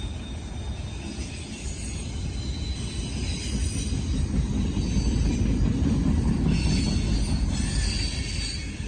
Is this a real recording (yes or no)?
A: yes